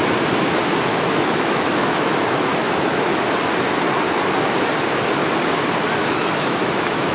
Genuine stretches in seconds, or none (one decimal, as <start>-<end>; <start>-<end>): 0.0-0.7; 3.1-6.1